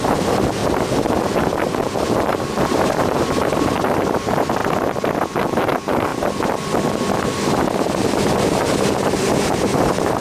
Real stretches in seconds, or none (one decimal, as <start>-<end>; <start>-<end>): 0.6-1.5; 4.6-5.4; 6.1-8.0